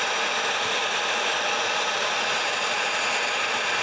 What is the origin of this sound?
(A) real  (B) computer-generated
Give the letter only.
A